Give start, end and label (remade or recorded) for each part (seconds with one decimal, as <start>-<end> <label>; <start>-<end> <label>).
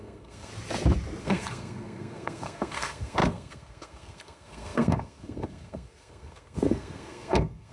0.0-0.5 remade; 0.5-1.2 recorded; 1.2-7.7 remade